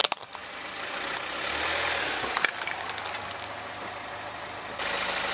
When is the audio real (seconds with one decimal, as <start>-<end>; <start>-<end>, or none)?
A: 0.0-5.3